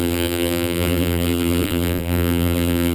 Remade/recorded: remade